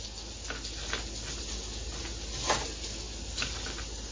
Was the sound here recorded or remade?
recorded